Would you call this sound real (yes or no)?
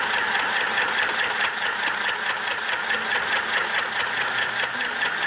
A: yes